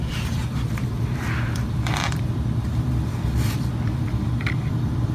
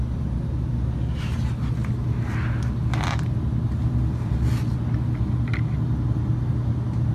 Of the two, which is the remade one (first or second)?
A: first